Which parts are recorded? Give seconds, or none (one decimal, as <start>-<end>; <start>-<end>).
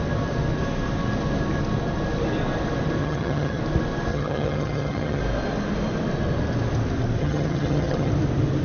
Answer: 0.0-3.0; 3.6-4.1; 5.2-7.2; 8.1-8.6